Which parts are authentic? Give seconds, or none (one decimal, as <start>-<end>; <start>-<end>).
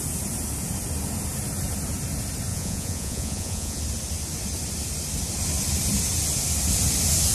0.0-2.5; 3.8-7.3